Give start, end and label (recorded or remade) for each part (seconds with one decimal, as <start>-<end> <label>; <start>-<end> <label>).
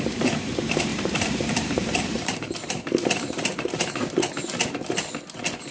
0.0-0.9 recorded; 0.9-4.3 remade; 4.3-5.7 recorded